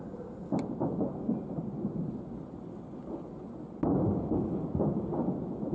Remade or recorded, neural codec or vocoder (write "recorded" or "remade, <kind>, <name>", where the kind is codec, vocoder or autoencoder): recorded